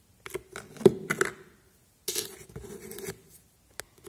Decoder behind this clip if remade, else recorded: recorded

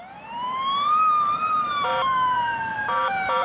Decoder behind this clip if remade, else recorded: remade, vocoder, BigVGAN v2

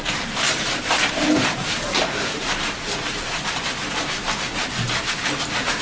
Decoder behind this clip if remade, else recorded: remade, vocoder, BigVGAN v2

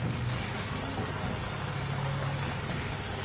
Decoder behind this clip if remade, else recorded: remade, vocoder, BigVGAN v2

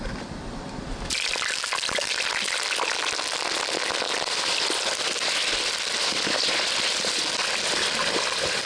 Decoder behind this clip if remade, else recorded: recorded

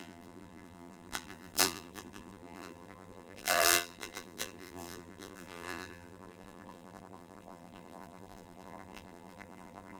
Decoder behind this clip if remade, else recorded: remade, vocoder, BigVGAN v2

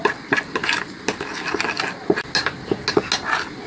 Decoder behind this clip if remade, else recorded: recorded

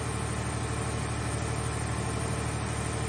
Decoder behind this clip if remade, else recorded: recorded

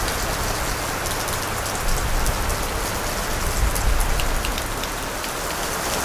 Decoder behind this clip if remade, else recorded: recorded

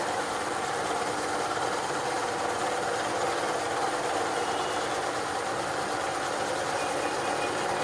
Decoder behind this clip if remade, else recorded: recorded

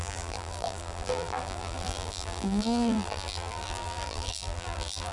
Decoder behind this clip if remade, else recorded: remade, vocoder, BigVGAN v2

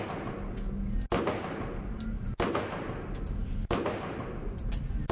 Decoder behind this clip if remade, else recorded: recorded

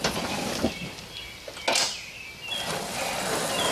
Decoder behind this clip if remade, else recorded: recorded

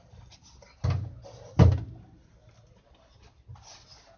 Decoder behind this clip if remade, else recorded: recorded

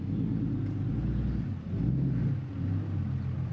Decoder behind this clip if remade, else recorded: recorded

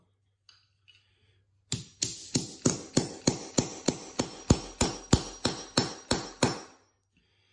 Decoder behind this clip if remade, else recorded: recorded